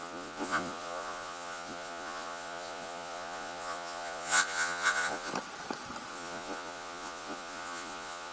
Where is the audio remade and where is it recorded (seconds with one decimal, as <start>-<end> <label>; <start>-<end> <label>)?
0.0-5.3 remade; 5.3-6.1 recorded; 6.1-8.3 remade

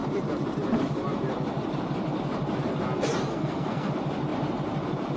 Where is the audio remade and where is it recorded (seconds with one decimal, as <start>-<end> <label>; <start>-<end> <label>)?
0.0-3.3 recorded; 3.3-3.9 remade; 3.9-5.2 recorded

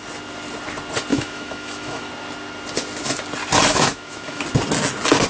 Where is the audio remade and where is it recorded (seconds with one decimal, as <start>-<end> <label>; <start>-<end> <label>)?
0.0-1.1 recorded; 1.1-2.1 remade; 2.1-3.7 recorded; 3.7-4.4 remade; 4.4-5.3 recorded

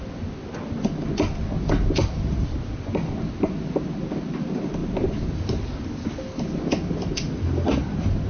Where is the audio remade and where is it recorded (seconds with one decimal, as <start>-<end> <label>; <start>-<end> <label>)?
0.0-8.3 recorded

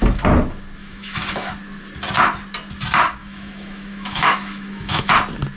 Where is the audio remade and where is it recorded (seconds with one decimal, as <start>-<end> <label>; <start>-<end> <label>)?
0.0-0.8 recorded; 0.8-1.5 remade; 1.5-3.2 recorded; 3.2-5.1 remade; 5.1-5.6 recorded